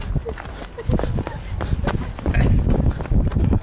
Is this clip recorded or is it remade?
recorded